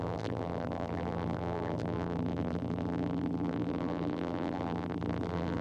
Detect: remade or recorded remade